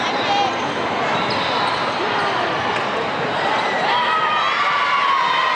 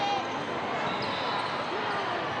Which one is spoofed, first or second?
first